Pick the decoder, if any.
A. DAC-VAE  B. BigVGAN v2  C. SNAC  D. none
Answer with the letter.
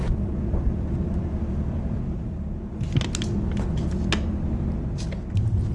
D